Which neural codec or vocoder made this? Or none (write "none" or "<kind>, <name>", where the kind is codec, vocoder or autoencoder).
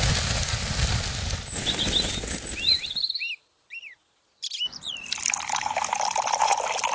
none